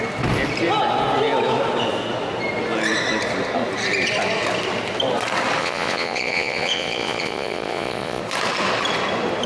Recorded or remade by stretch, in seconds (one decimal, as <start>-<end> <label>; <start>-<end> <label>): 0.0-5.6 recorded; 5.6-8.2 remade; 8.2-9.5 recorded